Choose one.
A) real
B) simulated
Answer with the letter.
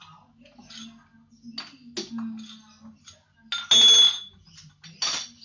A